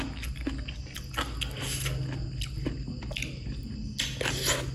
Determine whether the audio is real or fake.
real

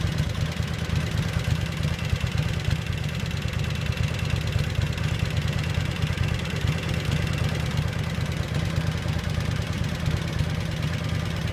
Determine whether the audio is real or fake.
real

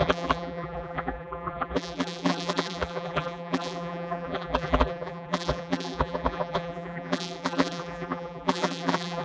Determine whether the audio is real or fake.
fake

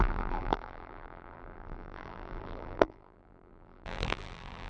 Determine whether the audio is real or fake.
fake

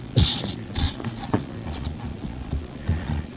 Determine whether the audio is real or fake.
fake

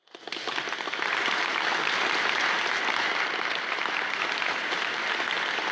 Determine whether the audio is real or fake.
real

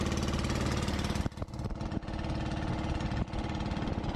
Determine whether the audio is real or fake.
real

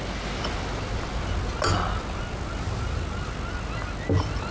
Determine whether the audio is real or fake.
real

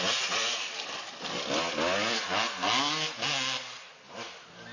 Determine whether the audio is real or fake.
real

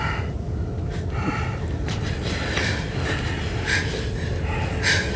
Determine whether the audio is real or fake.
real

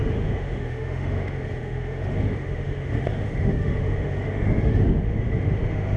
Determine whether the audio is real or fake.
fake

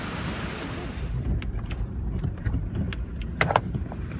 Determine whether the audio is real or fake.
fake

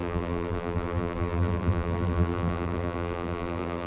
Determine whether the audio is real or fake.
fake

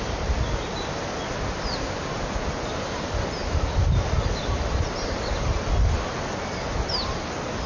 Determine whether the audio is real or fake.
real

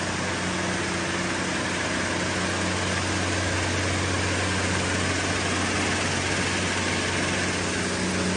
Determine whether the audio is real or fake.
real